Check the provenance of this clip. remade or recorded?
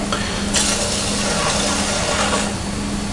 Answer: recorded